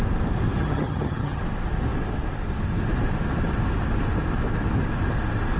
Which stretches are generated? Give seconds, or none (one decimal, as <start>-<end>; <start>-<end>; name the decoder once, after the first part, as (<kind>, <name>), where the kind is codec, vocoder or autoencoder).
0.6-1.4 (vocoder, HiFi-GAN)